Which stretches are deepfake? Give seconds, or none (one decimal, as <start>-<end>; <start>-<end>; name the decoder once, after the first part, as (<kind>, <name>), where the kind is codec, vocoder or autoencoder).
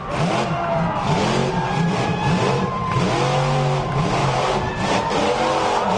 1.4-3.0 (vocoder, BigVGAN v2); 4.2-5.2